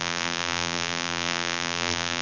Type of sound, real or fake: fake